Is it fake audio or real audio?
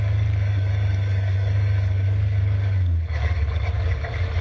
fake